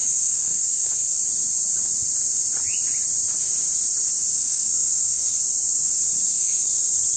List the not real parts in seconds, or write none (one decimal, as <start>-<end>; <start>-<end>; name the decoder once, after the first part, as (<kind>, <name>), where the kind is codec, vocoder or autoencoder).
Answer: 0.0-1.2 (codec, SNAC); 4.3-5.4; 6.3-6.8